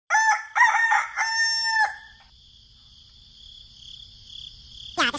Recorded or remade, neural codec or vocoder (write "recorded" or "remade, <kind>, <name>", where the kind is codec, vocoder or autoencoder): recorded